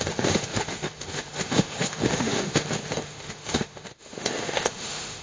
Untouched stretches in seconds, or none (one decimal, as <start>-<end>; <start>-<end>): none